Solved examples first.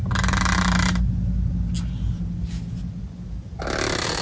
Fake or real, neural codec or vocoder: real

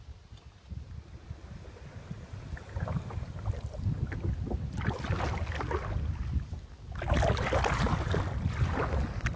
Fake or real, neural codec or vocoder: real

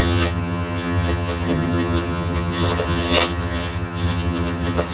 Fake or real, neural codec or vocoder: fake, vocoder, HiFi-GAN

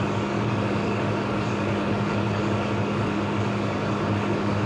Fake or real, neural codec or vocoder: fake, codec, DAC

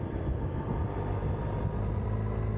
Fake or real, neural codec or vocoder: real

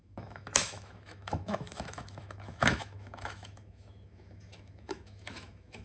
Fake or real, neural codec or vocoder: fake, autoencoder, DAC-VAE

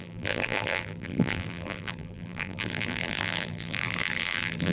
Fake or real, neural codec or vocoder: fake, vocoder, BigVGAN v2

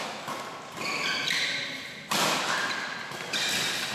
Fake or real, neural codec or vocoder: real